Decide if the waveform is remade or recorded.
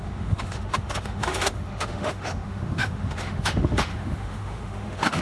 remade